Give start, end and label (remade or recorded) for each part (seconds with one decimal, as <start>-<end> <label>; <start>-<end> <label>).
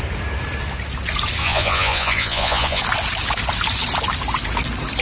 0.0-1.4 recorded; 1.4-2.8 remade; 2.8-5.0 recorded